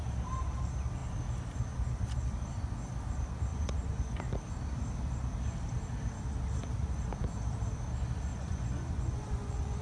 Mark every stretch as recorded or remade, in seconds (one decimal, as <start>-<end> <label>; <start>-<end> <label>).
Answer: 0.0-3.5 recorded; 3.5-4.2 remade; 4.2-8.3 recorded; 8.3-9.8 remade